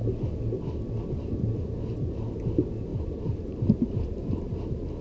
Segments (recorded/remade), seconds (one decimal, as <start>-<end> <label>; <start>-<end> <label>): 0.0-2.9 recorded; 2.9-4.6 remade; 4.6-5.0 recorded